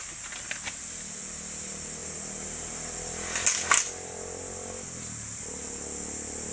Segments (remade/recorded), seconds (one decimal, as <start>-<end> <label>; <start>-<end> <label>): 0.0-6.5 recorded